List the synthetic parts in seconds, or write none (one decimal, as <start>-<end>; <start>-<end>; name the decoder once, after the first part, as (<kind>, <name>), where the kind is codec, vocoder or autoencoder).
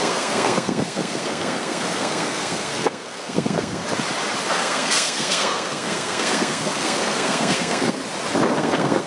0.0-3.8 (codec, SNAC); 4.5-8.0; 8.5-9.1